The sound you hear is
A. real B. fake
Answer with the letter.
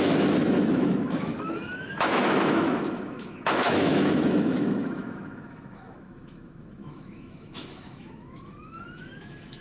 B